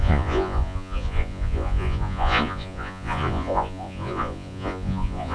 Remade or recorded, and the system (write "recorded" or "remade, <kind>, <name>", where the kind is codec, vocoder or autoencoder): remade, vocoder, Vocos